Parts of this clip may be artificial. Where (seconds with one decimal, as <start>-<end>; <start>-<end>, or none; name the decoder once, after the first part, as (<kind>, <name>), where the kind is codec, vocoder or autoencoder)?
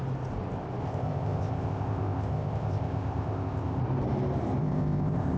0.8-3.8 (codec, ZipCodec); 4.6-5.4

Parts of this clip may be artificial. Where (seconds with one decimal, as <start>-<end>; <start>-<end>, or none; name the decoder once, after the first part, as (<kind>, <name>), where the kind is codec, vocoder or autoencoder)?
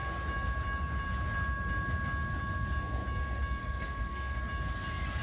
3.6-4.4 (codec, SNAC)